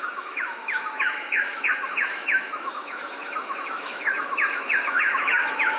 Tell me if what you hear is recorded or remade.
remade